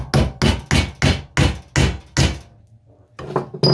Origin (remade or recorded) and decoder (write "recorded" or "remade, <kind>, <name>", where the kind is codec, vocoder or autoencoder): recorded